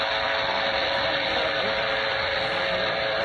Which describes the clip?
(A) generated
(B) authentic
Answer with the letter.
A